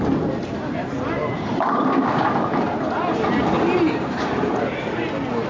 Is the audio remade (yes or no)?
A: no